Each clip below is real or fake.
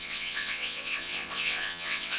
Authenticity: fake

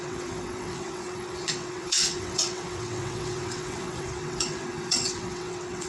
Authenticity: fake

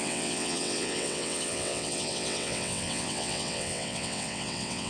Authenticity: fake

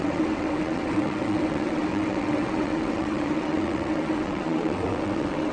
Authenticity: fake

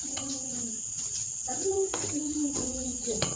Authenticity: fake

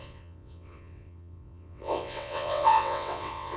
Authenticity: fake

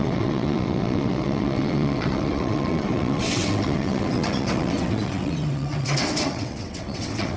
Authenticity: fake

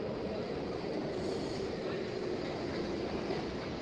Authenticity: real